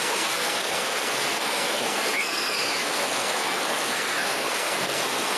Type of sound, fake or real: fake